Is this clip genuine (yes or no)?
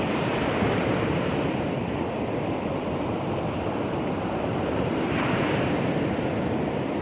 no